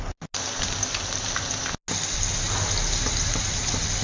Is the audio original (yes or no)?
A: yes